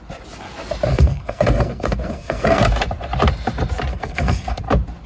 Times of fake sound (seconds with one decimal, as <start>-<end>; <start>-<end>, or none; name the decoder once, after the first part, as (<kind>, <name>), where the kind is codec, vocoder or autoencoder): 0.9-2.6 (codec, SNAC); 3.9-4.6